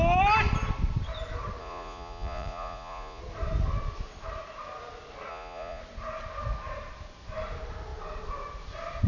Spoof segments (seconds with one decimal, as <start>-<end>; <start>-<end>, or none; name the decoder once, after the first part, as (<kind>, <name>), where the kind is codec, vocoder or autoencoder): 1.6-3.2 (vocoder, Vocos); 5.3-5.8